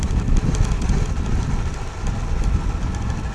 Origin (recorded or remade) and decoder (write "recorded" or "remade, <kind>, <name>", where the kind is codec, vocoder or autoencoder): recorded